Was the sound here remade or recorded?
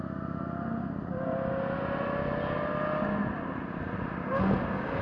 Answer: recorded